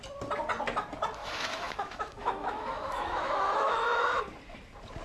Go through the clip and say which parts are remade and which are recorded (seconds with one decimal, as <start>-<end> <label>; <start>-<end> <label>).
0.0-1.2 recorded; 1.2-4.2 remade; 4.2-5.0 recorded

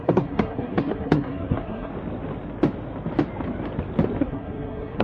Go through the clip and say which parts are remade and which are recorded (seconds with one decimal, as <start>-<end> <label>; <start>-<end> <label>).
0.0-1.9 remade; 1.9-4.2 recorded; 4.2-5.0 remade

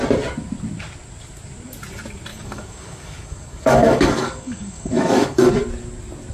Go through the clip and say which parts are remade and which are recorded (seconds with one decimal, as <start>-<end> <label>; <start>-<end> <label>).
0.0-2.3 recorded; 2.3-5.5 remade; 5.5-6.3 recorded

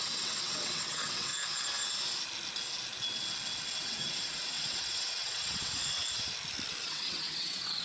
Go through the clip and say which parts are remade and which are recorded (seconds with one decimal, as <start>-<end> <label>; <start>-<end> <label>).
0.0-1.3 remade; 1.3-3.8 recorded; 3.8-6.0 remade; 6.0-6.8 recorded; 6.8-7.8 remade

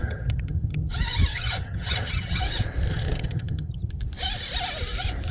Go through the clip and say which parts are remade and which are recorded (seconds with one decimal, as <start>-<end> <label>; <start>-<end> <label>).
0.0-0.9 remade; 0.9-1.3 recorded; 1.3-2.4 remade; 2.4-2.9 recorded; 2.9-3.9 remade; 3.9-5.3 recorded

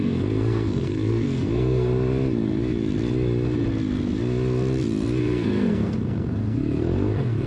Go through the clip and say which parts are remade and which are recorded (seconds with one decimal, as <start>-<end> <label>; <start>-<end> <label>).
0.0-1.9 remade; 1.9-5.2 recorded; 5.2-7.5 remade

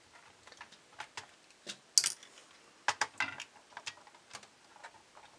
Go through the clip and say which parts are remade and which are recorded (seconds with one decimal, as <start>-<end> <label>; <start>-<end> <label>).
0.0-5.4 recorded

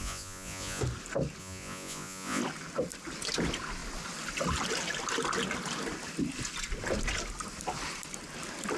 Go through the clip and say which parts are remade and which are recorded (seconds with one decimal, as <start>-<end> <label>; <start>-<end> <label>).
0.0-0.8 remade; 0.8-1.4 recorded; 1.4-2.4 remade; 2.4-8.8 recorded